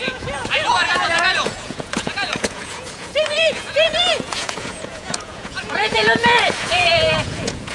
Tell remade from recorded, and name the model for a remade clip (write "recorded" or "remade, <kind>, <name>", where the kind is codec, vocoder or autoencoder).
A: remade, vocoder, Vocos